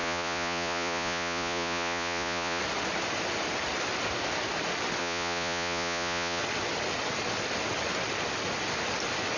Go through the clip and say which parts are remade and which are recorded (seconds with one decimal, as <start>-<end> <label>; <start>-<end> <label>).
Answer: 0.0-2.6 remade; 2.6-5.0 recorded; 5.0-6.4 remade; 6.4-9.4 recorded